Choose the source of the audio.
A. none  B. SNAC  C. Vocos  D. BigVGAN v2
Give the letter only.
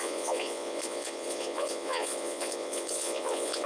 C